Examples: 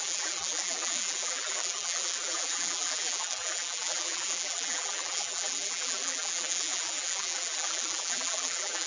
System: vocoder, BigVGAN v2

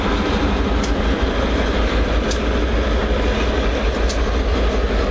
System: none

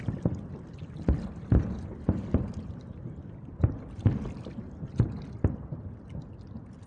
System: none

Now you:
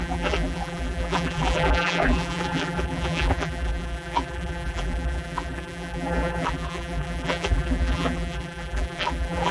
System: vocoder, BigVGAN v2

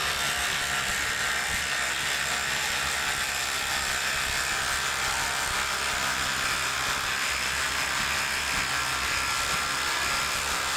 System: none